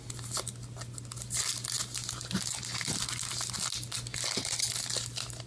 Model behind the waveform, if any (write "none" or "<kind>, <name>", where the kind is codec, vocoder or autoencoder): none